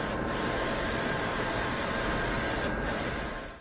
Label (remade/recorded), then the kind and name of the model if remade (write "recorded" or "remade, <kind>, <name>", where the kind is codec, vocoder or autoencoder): remade, vocoder, BigVGAN v2